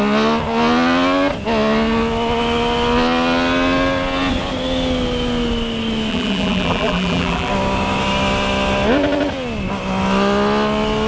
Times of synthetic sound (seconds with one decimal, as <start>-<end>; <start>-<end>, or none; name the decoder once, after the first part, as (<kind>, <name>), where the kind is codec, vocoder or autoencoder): 6.1-7.5 (vocoder, BigVGAN v2)